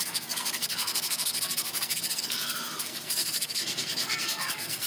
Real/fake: fake